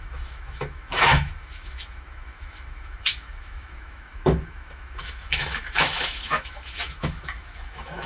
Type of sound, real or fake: fake